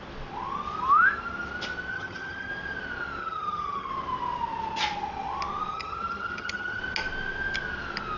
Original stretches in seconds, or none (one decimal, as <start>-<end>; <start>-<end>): 0.0-1.9; 2.5-3.2; 3.9-5.7; 6.8-8.2

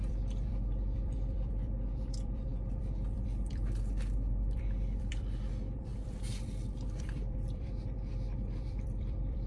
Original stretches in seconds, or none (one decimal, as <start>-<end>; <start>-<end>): none

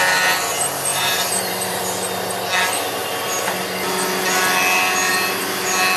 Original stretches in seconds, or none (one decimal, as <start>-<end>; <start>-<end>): 0.0-0.9; 1.8-6.0

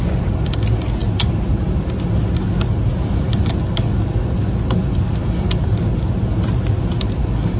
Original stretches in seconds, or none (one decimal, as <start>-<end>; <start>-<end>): 0.0-7.6

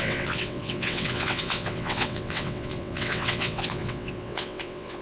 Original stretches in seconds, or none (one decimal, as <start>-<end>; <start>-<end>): none